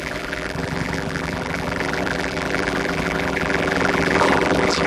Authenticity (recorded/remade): remade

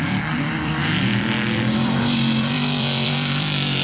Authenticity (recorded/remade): remade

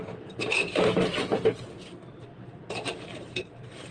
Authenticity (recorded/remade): remade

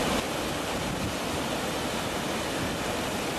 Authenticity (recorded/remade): recorded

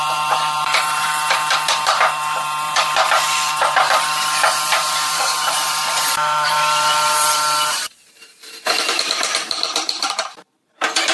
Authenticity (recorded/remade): remade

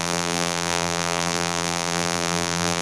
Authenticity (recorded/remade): remade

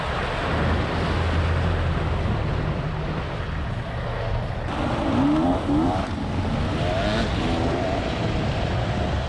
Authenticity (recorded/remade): recorded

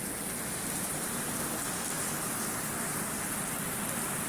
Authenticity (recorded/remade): remade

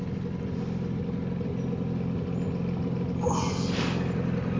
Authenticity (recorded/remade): recorded